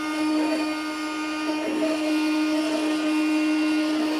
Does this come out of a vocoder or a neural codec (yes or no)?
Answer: no